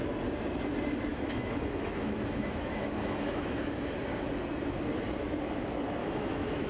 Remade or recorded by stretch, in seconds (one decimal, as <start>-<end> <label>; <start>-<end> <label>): 0.0-1.1 recorded; 1.1-3.8 remade; 3.8-6.0 recorded; 6.0-6.7 remade